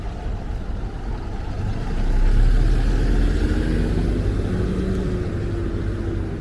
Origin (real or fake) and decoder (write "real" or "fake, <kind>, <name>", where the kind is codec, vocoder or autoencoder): real